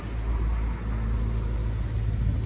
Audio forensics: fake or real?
real